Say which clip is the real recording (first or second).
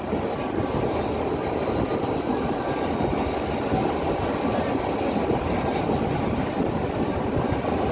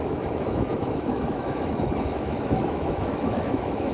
first